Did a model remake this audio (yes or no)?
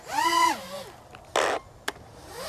no